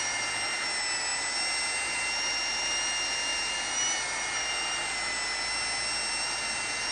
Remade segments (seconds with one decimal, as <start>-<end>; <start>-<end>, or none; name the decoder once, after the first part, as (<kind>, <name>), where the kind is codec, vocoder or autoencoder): none